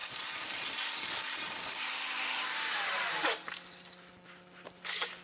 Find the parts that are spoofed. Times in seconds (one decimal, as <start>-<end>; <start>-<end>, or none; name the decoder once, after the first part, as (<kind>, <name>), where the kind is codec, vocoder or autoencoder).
none